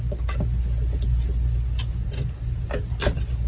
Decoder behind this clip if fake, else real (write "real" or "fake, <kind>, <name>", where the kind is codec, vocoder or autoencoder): real